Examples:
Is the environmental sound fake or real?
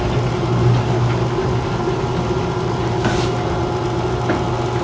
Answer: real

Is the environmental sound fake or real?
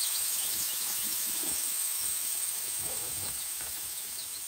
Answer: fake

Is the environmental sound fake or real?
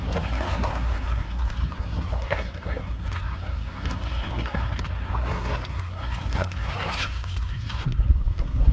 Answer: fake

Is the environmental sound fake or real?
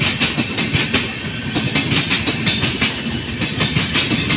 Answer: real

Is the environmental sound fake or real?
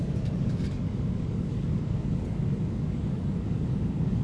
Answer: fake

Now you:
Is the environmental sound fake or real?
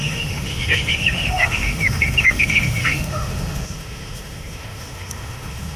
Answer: fake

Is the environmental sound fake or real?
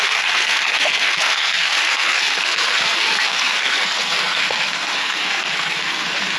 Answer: fake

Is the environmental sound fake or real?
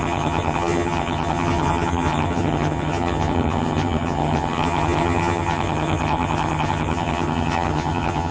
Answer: fake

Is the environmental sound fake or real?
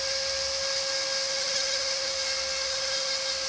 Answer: real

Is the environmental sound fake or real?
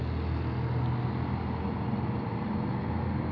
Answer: real